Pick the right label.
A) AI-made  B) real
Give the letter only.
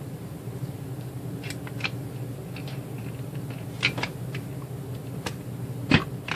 B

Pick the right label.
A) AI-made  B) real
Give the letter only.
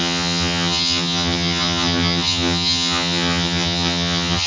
A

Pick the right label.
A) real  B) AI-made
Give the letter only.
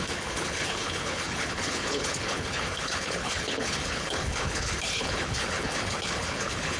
B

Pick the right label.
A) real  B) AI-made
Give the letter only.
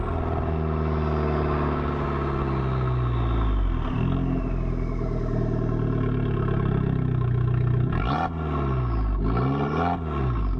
A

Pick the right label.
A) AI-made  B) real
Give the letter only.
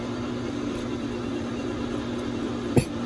A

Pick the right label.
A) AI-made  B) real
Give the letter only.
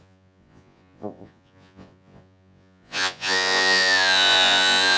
A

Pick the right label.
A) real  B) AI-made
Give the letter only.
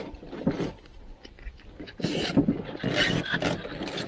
A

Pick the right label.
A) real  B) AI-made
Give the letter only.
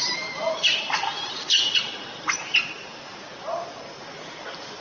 B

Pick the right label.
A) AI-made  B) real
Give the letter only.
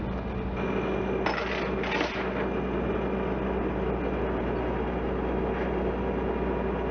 B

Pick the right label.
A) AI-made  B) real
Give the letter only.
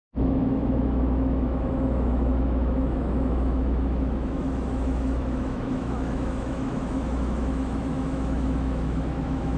A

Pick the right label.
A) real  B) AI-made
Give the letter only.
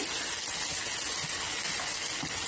A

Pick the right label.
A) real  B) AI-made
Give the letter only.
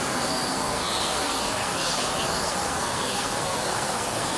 B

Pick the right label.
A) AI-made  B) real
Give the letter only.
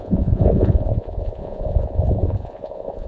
A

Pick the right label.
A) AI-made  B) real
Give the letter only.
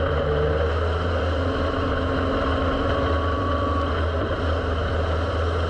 B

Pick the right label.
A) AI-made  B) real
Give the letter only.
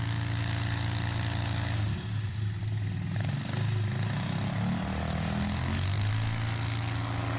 B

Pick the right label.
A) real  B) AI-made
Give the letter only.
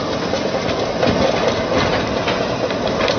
A